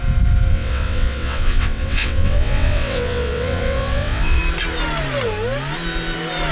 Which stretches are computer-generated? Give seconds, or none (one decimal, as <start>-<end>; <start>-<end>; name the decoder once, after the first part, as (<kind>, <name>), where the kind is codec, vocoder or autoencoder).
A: 0.5-4.4 (vocoder, WaveNeXt)